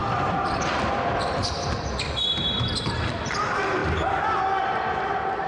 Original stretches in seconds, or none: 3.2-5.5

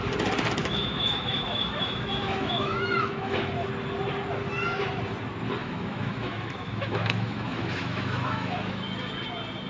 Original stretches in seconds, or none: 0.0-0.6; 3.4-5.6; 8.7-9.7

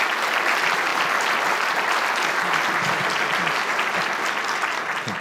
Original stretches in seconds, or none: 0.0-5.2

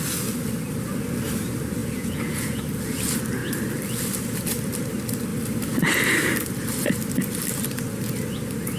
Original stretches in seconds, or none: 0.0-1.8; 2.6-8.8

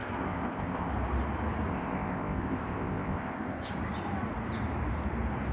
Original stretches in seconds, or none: 0.9-1.7; 3.7-5.5